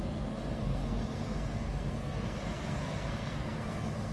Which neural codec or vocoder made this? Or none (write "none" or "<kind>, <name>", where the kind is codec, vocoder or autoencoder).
codec, SNAC